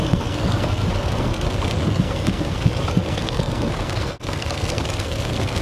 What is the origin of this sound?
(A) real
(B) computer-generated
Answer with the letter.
B